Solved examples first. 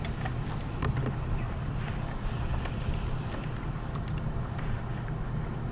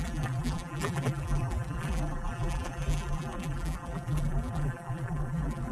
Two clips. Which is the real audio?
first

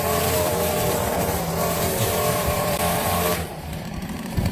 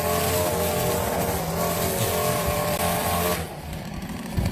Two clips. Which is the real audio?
second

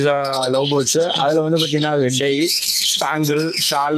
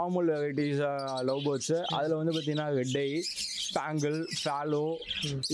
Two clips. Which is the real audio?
second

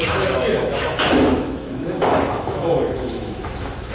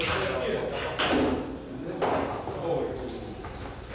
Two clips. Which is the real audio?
second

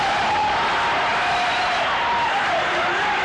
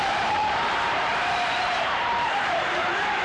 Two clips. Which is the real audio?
first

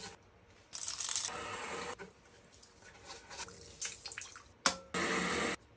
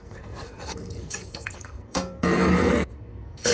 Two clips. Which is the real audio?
first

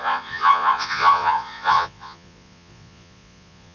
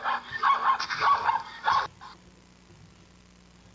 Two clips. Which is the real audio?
second